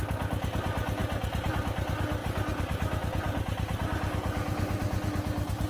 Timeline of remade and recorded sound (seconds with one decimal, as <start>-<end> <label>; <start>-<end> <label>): 0.0-5.7 recorded